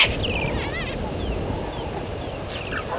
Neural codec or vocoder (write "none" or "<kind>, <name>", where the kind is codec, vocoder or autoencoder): none